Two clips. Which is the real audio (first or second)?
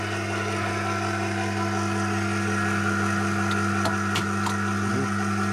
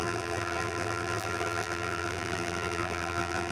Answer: first